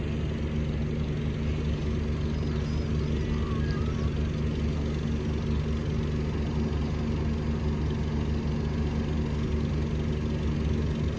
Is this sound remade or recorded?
recorded